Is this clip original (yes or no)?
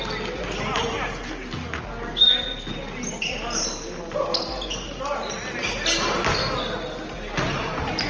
yes